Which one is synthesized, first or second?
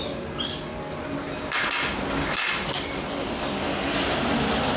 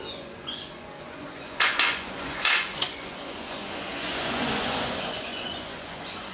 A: second